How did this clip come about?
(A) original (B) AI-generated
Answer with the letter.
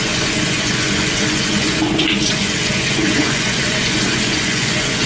B